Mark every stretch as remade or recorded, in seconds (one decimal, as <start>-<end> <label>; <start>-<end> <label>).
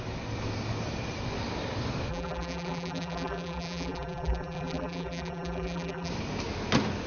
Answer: 0.0-2.1 recorded; 2.1-6.1 remade; 6.1-7.1 recorded